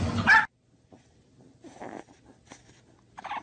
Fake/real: real